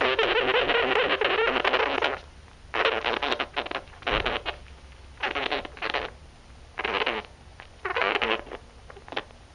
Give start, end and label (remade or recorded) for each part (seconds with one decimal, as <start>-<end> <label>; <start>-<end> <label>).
0.0-7.5 recorded; 7.5-8.6 remade; 8.6-9.5 recorded